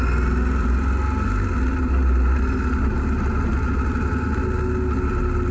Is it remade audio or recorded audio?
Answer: recorded